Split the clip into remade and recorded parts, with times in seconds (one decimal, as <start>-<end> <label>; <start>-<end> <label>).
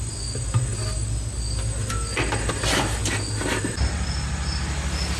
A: 0.0-5.2 recorded